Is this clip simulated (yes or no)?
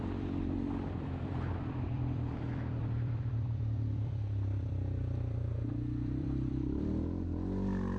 yes